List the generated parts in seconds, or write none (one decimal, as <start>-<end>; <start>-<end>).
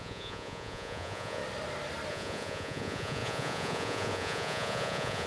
0.0-1.4; 2.1-5.3